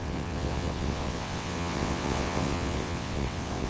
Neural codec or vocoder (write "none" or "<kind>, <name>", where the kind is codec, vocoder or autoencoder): vocoder, WaveNeXt